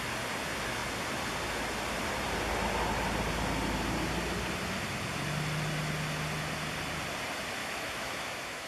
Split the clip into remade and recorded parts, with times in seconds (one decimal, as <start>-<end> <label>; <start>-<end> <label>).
0.0-7.6 recorded; 7.6-8.7 remade